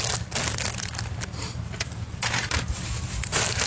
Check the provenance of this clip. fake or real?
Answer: real